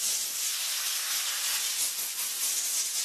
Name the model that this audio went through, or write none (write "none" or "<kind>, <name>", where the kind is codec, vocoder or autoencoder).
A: none